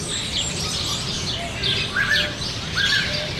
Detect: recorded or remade recorded